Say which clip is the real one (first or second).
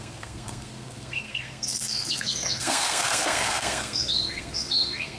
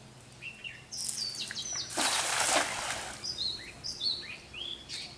second